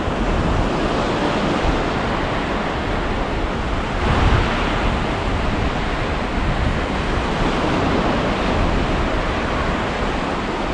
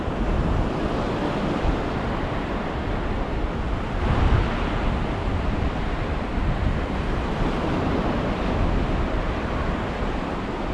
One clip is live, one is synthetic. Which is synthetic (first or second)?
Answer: second